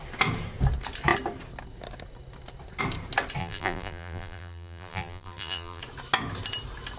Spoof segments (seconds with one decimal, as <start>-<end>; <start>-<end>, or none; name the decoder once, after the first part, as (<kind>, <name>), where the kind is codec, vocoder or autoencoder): 3.4-5.8 (vocoder, BigVGAN v2)